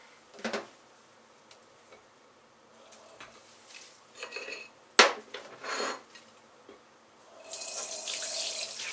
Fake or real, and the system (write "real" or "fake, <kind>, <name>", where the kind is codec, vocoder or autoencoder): real